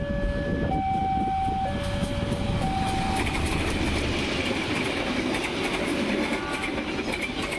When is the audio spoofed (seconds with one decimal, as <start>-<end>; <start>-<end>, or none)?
none